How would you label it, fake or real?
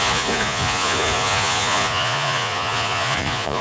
fake